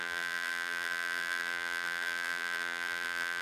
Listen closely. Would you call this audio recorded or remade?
remade